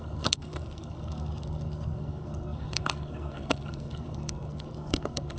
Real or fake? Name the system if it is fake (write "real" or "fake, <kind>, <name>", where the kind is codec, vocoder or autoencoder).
fake, codec, SNAC